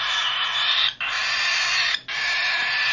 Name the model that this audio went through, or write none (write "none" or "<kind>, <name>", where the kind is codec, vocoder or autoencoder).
none